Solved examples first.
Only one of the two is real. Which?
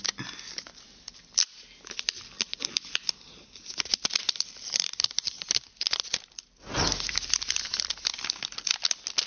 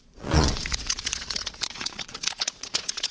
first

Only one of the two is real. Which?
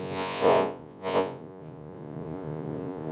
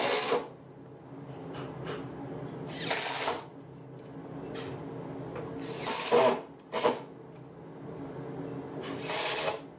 second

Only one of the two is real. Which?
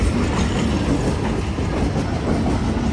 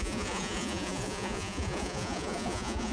first